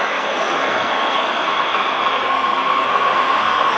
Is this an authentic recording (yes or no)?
no